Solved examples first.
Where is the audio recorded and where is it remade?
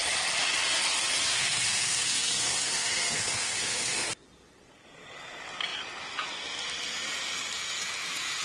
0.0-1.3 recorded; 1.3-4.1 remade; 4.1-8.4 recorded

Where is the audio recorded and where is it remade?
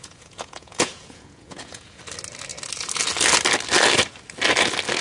0.0-2.0 remade; 2.0-5.0 recorded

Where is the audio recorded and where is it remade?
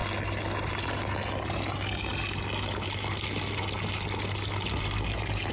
0.0-5.5 recorded